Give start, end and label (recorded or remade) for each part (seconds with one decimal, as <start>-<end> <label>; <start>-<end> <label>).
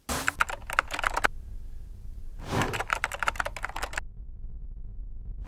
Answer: 0.0-2.3 recorded; 2.3-3.3 remade; 3.3-5.5 recorded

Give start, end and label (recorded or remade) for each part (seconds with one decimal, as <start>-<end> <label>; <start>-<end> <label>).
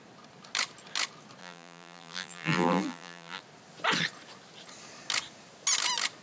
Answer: 0.0-1.4 recorded; 1.4-3.4 remade; 3.4-6.2 recorded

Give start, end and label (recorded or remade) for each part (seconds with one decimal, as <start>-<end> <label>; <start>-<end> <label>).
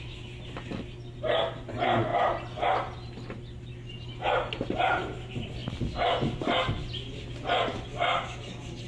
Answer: 0.0-8.9 recorded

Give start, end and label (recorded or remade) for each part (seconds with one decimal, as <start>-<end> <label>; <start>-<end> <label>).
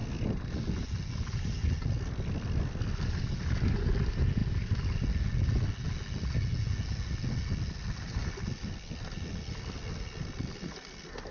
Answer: 0.0-11.3 recorded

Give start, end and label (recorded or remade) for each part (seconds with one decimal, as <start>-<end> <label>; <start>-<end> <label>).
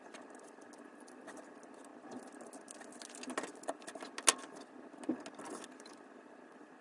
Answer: 0.0-6.8 recorded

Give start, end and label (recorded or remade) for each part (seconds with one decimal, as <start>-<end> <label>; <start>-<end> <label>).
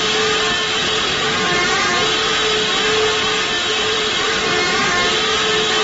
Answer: 0.0-3.7 recorded; 3.7-4.9 remade; 4.9-5.8 recorded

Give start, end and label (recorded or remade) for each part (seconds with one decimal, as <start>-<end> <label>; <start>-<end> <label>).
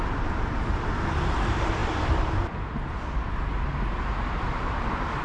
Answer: 0.0-5.2 remade